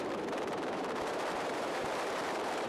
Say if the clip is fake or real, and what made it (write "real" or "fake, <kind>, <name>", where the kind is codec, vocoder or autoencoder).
fake, vocoder, BigVGAN v2